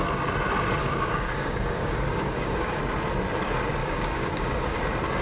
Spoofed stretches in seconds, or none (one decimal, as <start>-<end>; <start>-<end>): 0.8-2.8; 3.8-4.8